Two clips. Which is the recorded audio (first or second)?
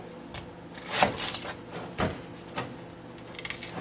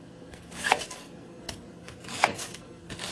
first